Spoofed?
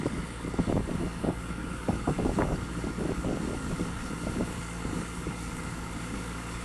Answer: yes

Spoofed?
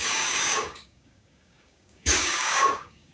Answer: yes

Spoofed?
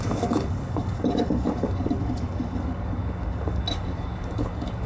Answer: yes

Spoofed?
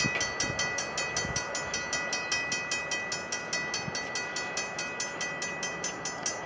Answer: no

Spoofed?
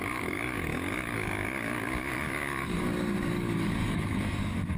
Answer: yes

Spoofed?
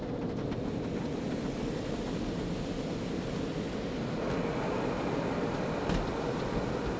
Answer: no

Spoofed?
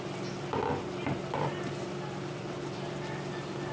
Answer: no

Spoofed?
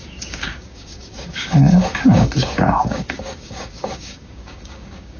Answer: yes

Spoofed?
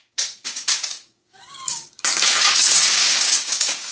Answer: yes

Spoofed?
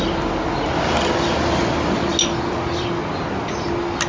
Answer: no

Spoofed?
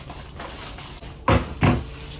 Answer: no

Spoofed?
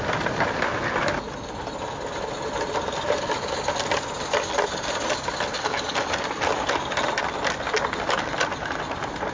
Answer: no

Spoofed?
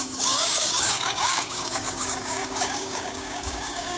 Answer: yes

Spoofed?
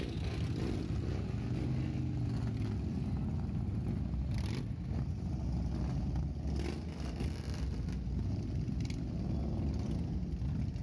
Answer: no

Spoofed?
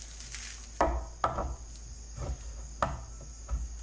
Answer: no